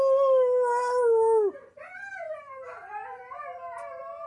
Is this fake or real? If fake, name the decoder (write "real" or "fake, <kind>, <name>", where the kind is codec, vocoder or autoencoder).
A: real